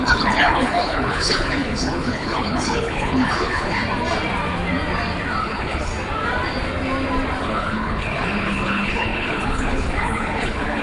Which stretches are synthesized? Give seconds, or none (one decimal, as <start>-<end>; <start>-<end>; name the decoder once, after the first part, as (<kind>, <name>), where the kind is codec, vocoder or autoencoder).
0.0-3.8 (codec, HILCodec); 5.4-5.9; 7.4-10.8